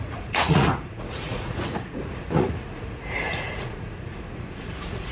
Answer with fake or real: fake